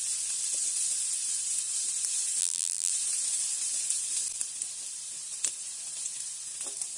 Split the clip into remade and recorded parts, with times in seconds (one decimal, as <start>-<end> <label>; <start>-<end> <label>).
0.0-2.4 recorded; 2.4-2.9 remade; 2.9-7.0 recorded